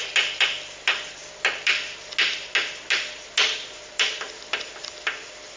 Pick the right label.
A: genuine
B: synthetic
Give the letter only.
A